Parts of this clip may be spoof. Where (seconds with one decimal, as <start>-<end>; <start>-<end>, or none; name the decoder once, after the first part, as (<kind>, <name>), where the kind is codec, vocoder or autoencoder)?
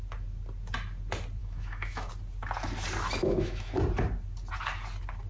1.4-2.1 (autoencoder, DAC-VAE); 3.2-3.8